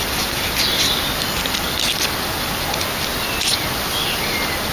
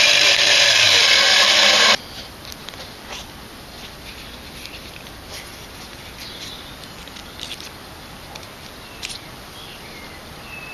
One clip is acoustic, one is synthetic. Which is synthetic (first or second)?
second